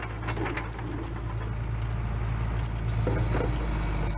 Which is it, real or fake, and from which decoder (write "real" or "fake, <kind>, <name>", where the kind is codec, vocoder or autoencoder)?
real